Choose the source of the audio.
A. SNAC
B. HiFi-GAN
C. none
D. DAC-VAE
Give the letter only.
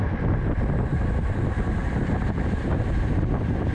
C